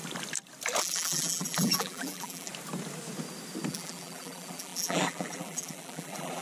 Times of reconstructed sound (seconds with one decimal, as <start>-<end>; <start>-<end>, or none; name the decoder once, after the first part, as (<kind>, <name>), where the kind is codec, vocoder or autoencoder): 0.8-2.5 (vocoder, BigVGAN v2); 3.7-6.4